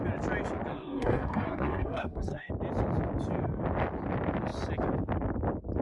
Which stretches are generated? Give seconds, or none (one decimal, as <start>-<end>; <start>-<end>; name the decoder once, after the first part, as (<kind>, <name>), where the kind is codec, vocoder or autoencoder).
0.7-2.5 (codec, SNAC)